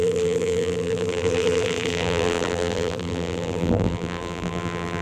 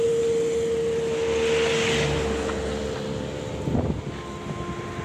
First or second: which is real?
second